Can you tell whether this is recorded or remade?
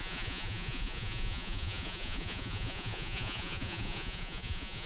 remade